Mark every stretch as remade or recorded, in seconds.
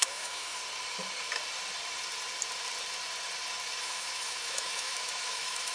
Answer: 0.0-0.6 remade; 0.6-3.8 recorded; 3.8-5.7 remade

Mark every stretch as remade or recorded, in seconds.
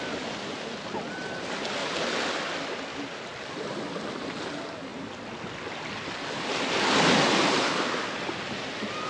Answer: 0.0-9.1 recorded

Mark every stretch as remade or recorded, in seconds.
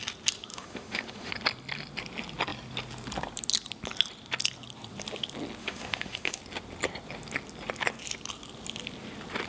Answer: 0.0-0.5 recorded; 0.5-1.3 remade; 1.3-5.6 recorded; 5.6-6.4 remade; 6.4-9.5 recorded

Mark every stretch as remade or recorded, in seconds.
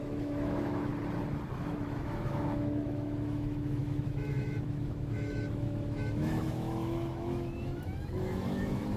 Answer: 0.0-0.9 remade; 0.9-1.6 recorded; 1.6-9.0 remade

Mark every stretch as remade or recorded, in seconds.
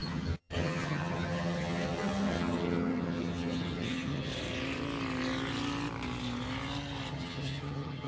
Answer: 0.0-4.3 remade; 4.3-7.1 recorded; 7.1-8.1 remade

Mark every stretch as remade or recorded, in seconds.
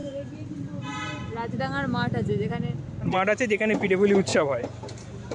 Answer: 0.0-1.3 remade; 1.3-4.3 recorded; 4.3-5.3 remade